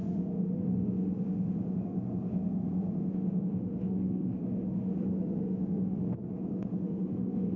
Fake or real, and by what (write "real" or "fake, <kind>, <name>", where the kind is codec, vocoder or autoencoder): fake, autoencoder, DAC-VAE